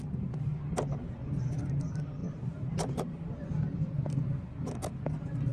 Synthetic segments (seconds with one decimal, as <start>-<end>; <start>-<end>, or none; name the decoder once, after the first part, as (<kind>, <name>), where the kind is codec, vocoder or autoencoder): 2.2-3.3 (vocoder, BigVGAN v2)